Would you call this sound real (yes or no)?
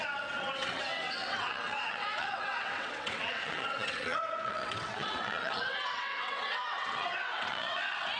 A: no